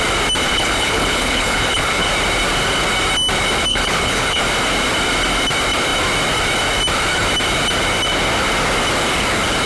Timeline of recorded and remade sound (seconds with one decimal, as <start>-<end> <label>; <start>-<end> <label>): 0.0-0.5 recorded; 0.5-2.1 remade; 2.1-3.7 recorded; 3.7-4.4 remade; 4.4-9.7 recorded